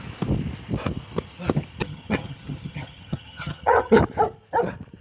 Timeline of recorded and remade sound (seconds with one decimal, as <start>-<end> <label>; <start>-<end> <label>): 0.0-1.8 recorded; 1.8-4.0 remade; 4.0-5.0 recorded